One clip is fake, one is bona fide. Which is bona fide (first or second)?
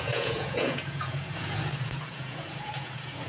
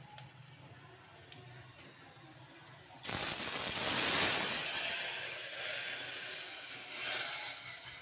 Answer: second